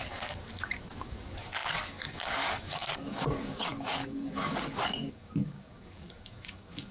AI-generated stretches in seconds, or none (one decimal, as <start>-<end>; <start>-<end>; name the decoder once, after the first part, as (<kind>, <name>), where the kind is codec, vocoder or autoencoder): 0.0-6.9 (codec, DAC)